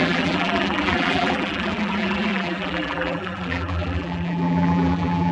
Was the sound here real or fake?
fake